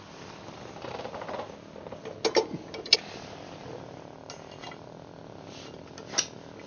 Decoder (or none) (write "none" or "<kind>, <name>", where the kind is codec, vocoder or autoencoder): none